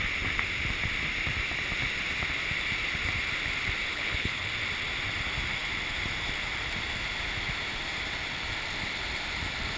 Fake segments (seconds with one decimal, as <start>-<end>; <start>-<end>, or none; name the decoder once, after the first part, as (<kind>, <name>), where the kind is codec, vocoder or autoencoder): 3.9-4.5 (codec, HILCodec)